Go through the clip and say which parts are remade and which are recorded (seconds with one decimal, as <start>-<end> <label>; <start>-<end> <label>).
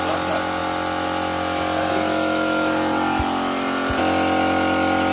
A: 0.0-5.1 recorded